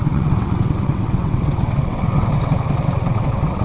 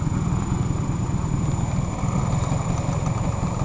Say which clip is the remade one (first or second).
first